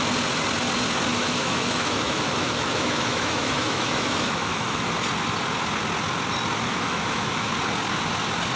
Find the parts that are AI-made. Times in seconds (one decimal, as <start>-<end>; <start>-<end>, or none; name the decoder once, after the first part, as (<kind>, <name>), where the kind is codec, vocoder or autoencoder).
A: 1.1-4.9 (autoencoder, DAC-VAE); 6.7-7.5